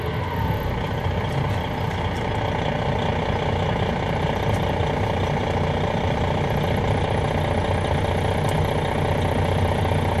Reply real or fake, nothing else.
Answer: real